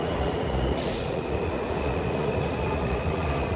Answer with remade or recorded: remade